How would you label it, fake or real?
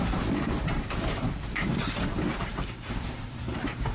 fake